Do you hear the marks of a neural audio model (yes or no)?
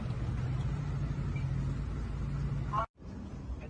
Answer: no